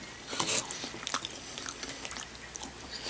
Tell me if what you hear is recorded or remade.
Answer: recorded